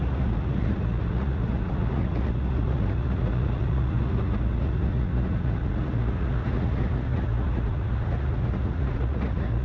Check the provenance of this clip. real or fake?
fake